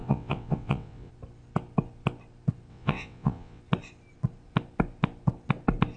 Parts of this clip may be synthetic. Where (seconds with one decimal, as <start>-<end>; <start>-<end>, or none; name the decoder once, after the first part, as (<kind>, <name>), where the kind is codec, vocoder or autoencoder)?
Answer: 0.0-1.1 (vocoder, WaveNeXt); 2.7-3.6